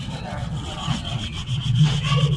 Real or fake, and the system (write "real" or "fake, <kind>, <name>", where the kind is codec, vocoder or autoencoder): fake, vocoder, WaveNeXt